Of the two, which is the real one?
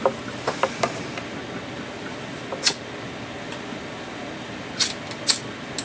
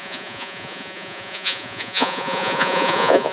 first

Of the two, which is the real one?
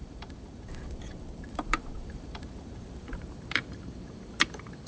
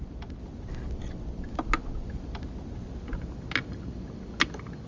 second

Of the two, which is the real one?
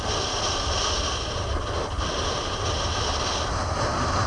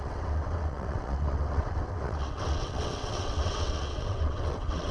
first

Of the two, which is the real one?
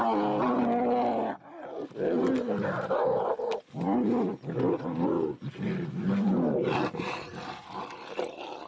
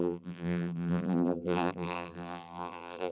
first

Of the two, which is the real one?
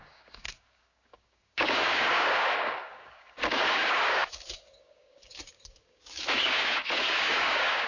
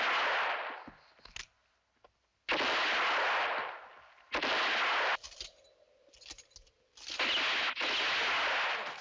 second